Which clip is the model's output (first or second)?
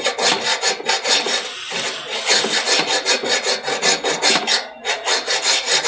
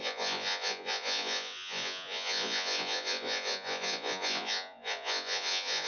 second